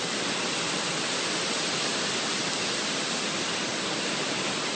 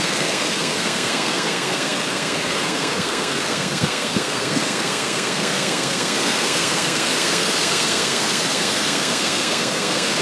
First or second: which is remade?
second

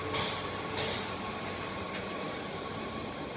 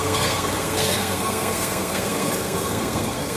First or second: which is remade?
second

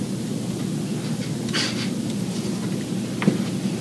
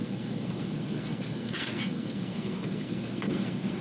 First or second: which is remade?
second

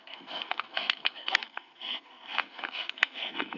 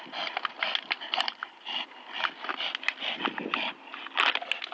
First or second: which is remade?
first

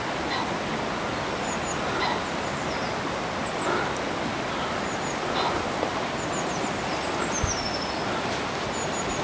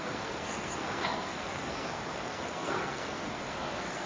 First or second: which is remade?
second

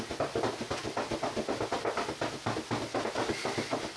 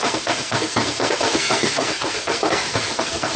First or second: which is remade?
second